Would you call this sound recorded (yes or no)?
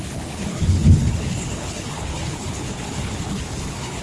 no